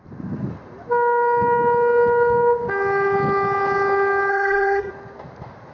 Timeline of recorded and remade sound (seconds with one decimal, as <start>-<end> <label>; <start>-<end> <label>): 0.0-4.3 recorded; 4.3-4.9 remade; 4.9-5.7 recorded